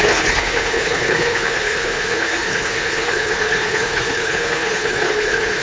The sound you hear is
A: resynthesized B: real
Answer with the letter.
A